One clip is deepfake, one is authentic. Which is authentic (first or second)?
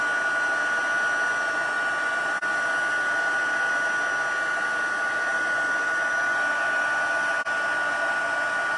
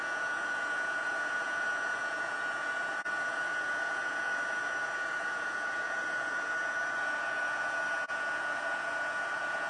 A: first